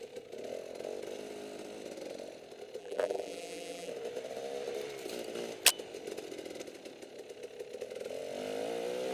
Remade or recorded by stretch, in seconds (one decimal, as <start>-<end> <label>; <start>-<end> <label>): 0.0-2.8 recorded; 2.8-3.9 remade; 3.9-9.1 recorded